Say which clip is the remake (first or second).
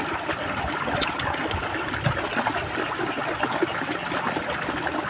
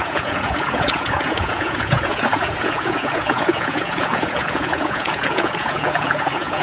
second